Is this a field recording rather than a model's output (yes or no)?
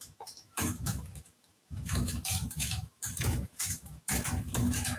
no